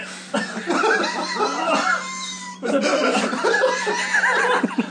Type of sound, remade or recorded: recorded